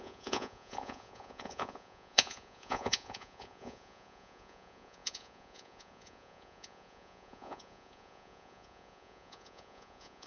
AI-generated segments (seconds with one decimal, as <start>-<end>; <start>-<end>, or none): 0.0-10.3